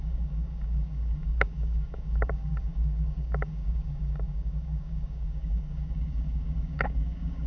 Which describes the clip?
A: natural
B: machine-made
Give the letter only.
B